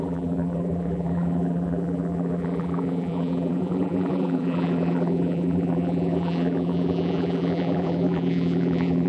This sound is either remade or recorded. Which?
remade